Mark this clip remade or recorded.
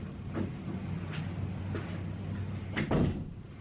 recorded